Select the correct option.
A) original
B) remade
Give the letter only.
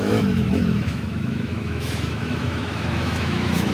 B